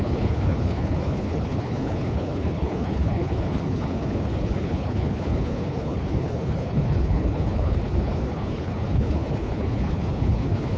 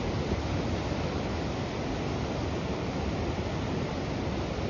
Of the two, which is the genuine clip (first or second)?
second